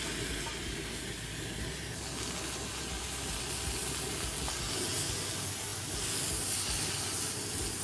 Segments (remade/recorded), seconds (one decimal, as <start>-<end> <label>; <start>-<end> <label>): 0.0-7.8 recorded